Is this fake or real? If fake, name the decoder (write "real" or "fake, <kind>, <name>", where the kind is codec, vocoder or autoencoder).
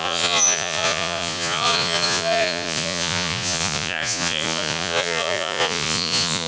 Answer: fake, vocoder, Vocos